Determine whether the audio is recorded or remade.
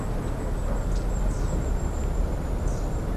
recorded